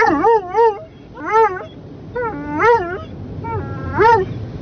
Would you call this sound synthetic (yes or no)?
no